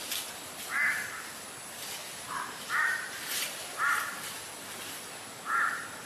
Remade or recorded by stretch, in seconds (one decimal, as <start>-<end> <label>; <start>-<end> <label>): 0.0-2.0 recorded; 2.0-4.2 remade; 4.2-6.1 recorded